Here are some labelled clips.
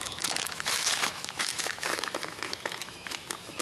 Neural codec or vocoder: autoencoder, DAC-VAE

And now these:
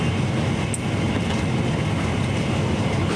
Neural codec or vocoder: none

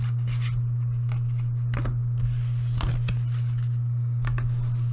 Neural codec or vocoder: none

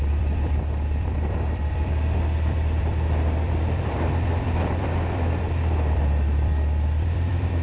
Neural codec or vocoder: vocoder, BigVGAN v2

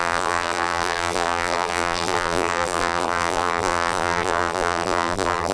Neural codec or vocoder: vocoder, BigVGAN v2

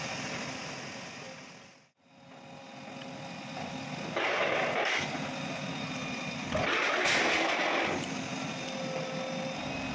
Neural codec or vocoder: none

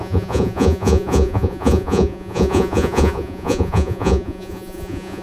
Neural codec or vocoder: vocoder, Vocos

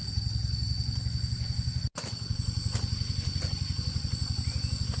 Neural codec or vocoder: none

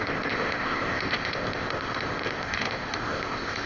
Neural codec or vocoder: codec, ZipCodec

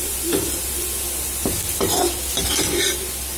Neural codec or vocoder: none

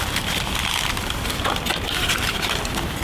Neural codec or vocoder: vocoder, BigVGAN v2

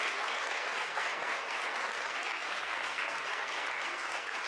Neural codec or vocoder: codec, SNAC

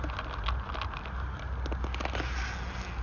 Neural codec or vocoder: none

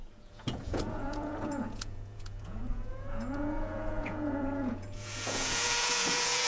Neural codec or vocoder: vocoder, Vocos